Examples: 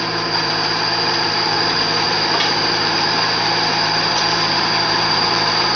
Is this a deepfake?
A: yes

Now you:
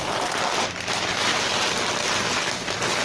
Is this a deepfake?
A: no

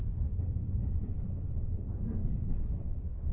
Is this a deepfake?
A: no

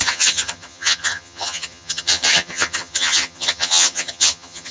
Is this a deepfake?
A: yes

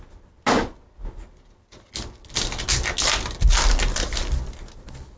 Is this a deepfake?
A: no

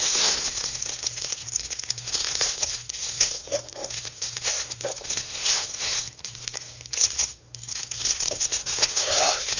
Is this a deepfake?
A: yes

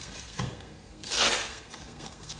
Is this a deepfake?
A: yes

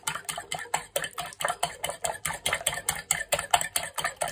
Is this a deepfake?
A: no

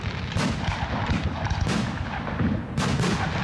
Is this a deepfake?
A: no